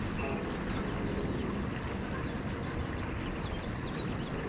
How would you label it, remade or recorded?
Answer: recorded